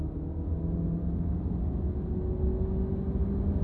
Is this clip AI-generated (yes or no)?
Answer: no